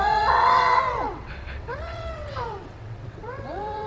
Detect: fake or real fake